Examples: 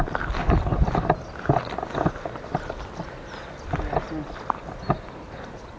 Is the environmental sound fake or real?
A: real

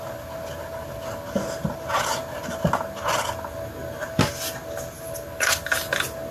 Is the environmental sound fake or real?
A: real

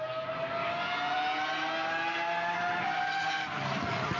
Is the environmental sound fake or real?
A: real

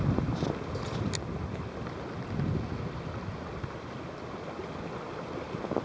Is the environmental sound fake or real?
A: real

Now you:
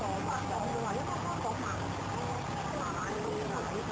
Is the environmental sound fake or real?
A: real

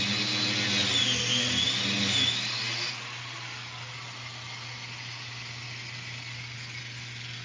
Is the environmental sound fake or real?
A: real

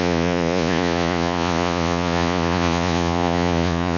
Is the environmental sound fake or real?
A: fake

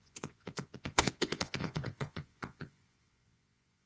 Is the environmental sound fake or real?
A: fake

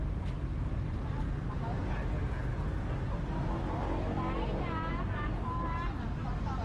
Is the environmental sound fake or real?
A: real